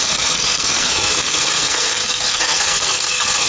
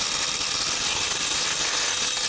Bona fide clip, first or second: second